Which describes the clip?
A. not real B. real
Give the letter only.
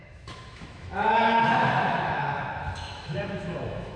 A